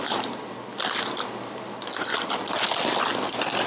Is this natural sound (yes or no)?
yes